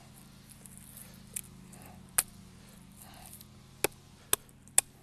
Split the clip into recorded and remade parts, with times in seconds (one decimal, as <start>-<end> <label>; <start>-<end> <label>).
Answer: 0.0-5.0 recorded